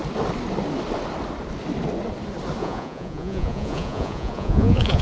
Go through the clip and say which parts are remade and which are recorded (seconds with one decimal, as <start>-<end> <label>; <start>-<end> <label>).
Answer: 0.0-2.6 recorded; 2.6-5.0 remade

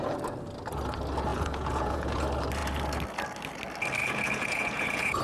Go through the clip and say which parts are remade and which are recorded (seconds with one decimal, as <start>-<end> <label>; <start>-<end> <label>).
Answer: 0.0-1.3 recorded; 1.3-2.2 remade; 2.2-4.0 recorded; 4.0-5.2 remade

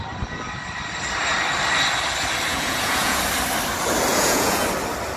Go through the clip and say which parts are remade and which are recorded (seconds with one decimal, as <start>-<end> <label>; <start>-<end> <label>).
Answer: 0.0-2.5 recorded; 2.5-3.2 remade; 3.2-4.1 recorded; 4.1-4.6 remade; 4.6-5.2 recorded

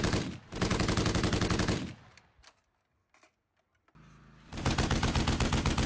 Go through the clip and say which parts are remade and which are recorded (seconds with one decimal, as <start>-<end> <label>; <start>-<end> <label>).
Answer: 0.0-5.9 recorded

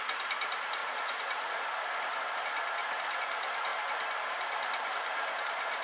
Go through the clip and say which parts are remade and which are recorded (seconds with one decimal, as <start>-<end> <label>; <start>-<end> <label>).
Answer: 0.0-0.8 recorded; 0.8-1.6 remade; 1.6-5.8 recorded

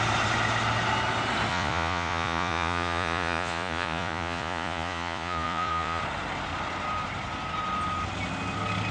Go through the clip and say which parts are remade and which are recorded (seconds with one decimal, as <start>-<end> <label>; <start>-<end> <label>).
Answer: 0.0-1.5 recorded; 1.5-6.0 remade; 6.0-8.9 recorded

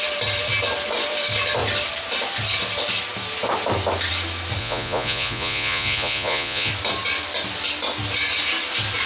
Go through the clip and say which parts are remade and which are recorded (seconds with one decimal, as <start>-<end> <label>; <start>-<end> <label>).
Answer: 0.0-4.6 recorded; 4.6-6.7 remade; 6.7-9.1 recorded

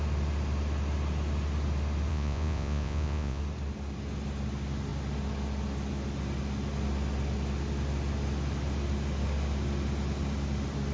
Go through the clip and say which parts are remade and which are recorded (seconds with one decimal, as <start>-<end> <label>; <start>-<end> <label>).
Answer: 0.0-2.1 recorded; 2.1-3.4 remade; 3.4-10.9 recorded